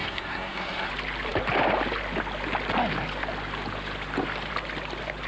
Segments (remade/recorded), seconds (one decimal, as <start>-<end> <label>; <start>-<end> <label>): 0.0-0.9 remade; 0.9-5.3 recorded